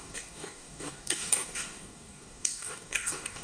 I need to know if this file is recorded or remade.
remade